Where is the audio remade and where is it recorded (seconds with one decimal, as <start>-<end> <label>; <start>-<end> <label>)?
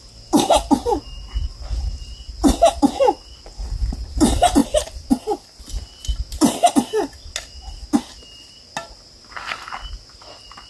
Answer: 0.0-4.6 recorded; 4.6-5.6 remade; 5.6-10.7 recorded